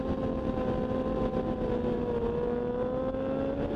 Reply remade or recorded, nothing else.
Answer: recorded